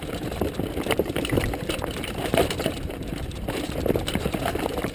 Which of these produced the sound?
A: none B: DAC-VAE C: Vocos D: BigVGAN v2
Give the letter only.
D